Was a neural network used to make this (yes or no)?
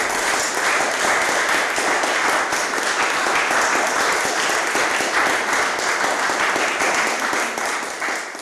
no